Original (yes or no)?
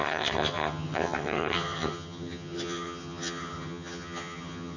no